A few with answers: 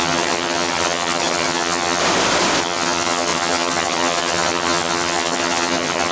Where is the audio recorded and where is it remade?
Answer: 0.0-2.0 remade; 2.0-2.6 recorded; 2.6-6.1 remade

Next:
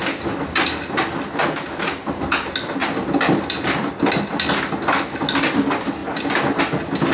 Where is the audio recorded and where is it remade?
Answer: 0.0-7.1 recorded

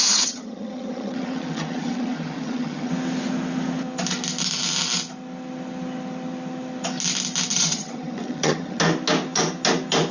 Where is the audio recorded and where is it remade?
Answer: 0.0-2.9 remade; 2.9-7.5 recorded; 7.5-8.8 remade; 8.8-10.1 recorded

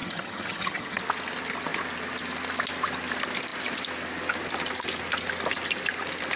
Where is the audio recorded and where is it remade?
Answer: 0.0-1.0 remade; 1.0-6.4 recorded